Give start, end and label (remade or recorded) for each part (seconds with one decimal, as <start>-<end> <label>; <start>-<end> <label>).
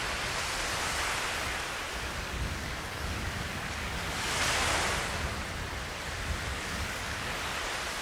0.0-1.9 recorded; 1.9-4.4 remade; 4.4-6.5 recorded; 6.5-7.3 remade; 7.3-8.0 recorded